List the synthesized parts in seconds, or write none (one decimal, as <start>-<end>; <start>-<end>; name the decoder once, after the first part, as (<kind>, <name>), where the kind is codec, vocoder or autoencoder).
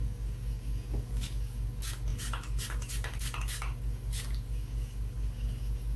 0.0-6.0 (codec, DAC)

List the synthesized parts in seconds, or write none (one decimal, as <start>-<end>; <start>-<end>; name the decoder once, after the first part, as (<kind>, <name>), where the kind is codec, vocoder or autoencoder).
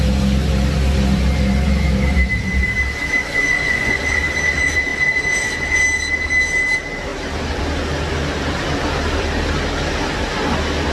3.2-4.0 (vocoder, Vocos)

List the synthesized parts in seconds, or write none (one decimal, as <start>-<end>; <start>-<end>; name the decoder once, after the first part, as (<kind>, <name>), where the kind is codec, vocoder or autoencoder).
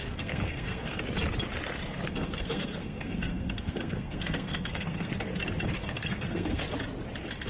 0.0-1.0 (codec, SNAC); 2.1-5.1; 5.8-6.6